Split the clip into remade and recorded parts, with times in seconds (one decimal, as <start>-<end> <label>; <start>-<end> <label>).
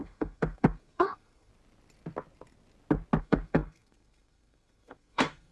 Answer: 0.0-1.5 remade; 1.5-3.2 recorded; 3.2-5.5 remade